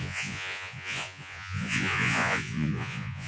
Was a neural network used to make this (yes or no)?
yes